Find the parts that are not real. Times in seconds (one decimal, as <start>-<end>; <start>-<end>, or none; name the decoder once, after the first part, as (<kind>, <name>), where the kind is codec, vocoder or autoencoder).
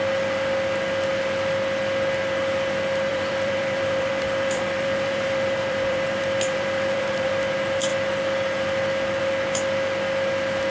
3.1-7.3 (vocoder, BigVGAN v2)